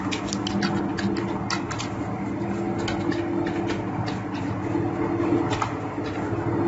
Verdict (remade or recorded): recorded